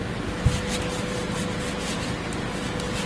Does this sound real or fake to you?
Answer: real